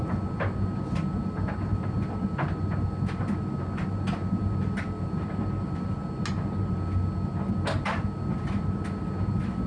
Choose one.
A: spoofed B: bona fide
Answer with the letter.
B